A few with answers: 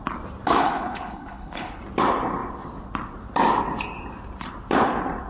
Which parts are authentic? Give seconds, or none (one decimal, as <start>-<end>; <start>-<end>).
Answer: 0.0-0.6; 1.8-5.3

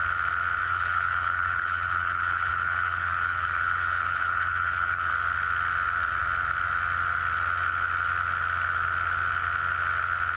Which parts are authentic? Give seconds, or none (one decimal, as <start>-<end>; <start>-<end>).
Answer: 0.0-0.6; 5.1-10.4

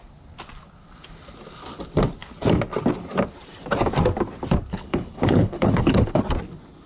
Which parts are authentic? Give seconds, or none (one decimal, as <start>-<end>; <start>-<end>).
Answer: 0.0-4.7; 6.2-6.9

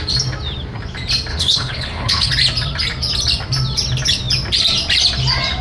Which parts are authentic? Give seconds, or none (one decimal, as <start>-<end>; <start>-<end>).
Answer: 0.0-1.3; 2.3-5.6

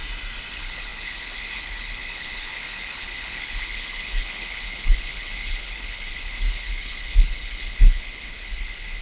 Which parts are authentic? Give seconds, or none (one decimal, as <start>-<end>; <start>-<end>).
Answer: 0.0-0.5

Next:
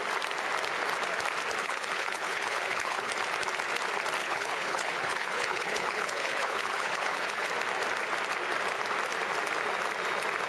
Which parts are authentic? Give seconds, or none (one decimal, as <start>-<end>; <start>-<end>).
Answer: 0.0-1.6; 3.1-4.2; 7.5-10.5

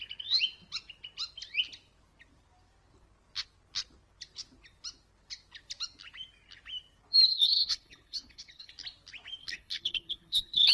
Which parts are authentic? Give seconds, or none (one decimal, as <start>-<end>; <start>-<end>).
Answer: 0.0-7.3; 8.7-9.4

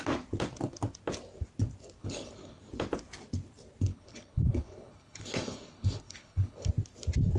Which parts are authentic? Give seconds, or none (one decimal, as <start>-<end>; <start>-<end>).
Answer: 0.0-2.0; 2.6-3.9; 6.7-7.4